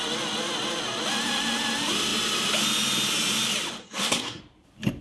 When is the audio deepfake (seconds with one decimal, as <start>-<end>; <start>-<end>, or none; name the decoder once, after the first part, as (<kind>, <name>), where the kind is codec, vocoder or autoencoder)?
3.8-4.4 (codec, SNAC)